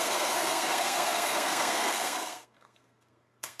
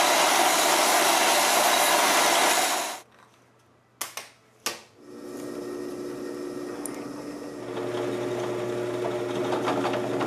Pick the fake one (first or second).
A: first